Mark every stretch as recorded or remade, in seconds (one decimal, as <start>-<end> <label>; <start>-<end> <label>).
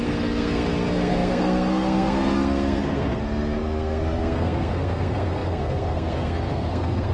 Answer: 0.0-7.1 remade